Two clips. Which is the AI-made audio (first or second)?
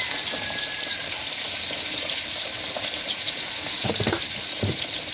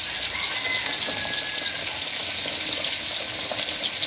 first